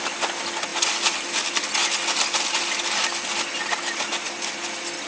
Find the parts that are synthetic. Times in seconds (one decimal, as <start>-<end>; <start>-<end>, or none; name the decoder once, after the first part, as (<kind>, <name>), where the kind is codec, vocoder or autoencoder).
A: none